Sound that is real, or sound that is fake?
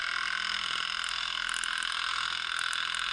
real